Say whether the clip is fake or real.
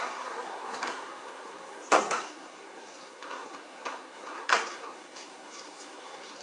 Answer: fake